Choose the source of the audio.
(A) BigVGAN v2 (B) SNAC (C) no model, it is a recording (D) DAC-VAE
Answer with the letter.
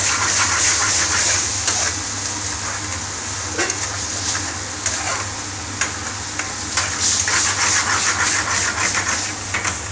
C